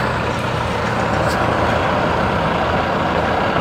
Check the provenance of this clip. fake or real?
real